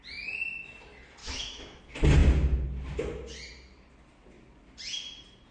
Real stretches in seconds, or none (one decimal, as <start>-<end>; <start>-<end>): 0.0-1.2; 1.8-5.5